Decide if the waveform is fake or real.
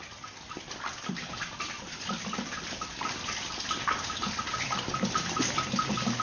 real